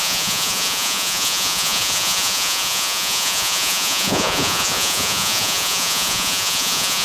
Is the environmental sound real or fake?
fake